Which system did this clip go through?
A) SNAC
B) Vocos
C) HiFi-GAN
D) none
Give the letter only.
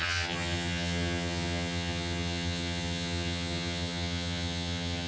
C